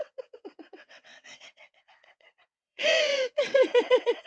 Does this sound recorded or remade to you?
remade